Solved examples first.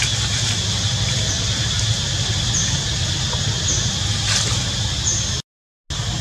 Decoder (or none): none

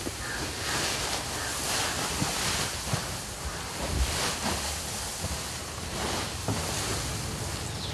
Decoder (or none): none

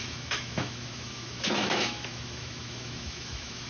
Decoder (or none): autoencoder, DAC-VAE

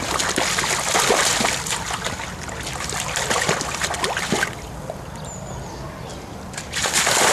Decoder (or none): none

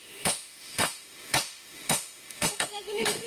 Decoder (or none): autoencoder, DAC-VAE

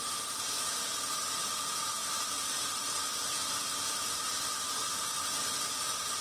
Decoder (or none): none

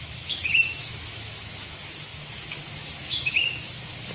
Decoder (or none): autoencoder, DAC-VAE